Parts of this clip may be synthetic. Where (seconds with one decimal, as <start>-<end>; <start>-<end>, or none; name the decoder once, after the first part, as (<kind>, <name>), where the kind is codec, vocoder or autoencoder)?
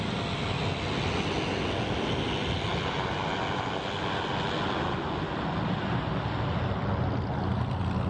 none